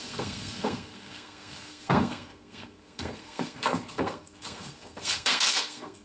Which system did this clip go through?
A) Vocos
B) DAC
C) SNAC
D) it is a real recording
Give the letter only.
C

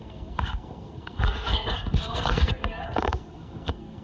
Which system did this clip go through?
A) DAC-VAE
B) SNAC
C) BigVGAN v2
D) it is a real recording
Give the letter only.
B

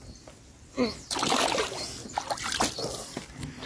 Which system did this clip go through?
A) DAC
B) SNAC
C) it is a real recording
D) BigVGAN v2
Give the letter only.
C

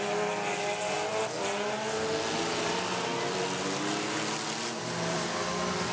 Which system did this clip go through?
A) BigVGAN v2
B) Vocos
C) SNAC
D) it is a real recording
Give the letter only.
D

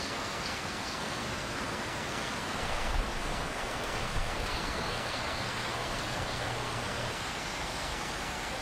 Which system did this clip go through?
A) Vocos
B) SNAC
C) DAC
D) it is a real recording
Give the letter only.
B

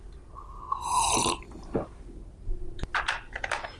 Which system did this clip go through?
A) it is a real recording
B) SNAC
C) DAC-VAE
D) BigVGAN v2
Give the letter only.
A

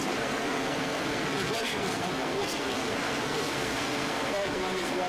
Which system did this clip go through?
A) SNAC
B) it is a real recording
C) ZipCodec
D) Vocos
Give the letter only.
A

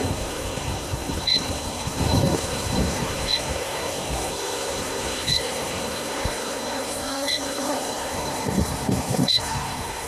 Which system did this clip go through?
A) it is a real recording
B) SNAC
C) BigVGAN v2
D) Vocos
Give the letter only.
B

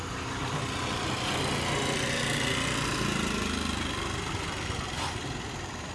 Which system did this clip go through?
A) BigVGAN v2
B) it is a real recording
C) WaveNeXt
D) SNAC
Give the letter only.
B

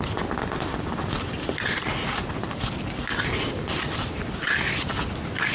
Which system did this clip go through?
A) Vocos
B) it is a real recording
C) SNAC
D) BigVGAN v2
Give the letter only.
B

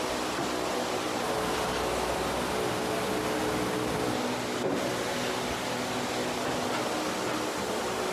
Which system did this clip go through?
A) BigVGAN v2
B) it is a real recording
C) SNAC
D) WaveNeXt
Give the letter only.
B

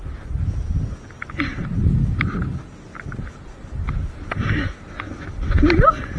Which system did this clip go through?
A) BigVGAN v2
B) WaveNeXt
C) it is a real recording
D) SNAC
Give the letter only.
C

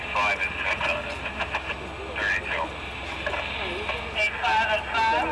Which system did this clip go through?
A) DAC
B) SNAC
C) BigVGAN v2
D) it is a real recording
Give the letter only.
D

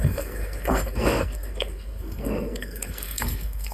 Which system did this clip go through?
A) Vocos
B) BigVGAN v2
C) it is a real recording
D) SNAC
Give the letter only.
D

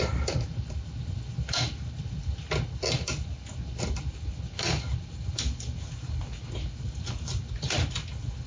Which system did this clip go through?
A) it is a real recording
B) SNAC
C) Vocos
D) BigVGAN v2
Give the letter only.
A